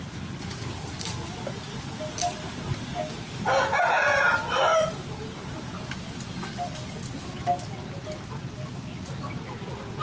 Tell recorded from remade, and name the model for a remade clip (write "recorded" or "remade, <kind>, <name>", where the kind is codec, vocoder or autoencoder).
recorded